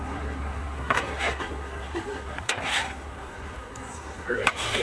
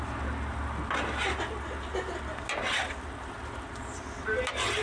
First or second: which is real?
second